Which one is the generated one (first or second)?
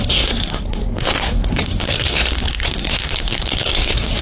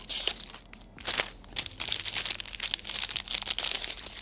first